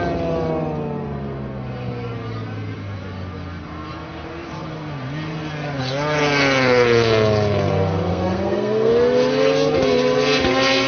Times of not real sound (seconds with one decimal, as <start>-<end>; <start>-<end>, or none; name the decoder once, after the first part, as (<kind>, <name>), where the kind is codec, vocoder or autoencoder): 8.1-8.9 (codec, SNAC)